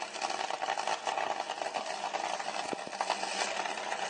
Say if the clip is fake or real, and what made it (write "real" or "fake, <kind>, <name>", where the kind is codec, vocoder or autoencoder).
real